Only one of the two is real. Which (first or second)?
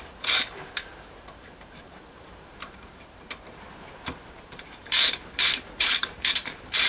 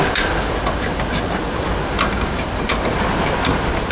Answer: second